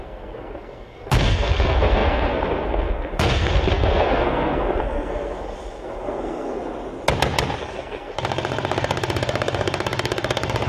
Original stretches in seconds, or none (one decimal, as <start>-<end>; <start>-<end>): 6.6-7.6